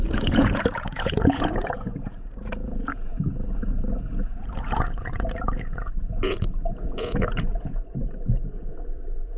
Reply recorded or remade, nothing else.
remade